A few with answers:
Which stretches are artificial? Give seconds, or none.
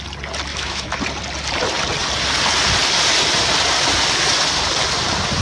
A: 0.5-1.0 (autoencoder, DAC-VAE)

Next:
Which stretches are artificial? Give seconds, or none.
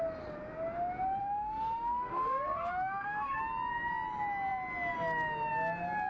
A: 1.2-3.4 (autoencoder, DAC-VAE)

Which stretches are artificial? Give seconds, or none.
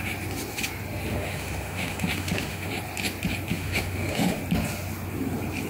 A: 1.1-2.7 (autoencoder, DAC-VAE); 3.5-4.4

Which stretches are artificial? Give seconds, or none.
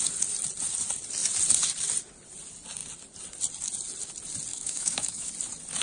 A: 4.5-5.3 (autoencoder, DAC-VAE)